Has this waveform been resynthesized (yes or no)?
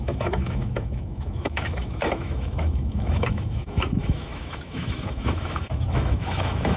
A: yes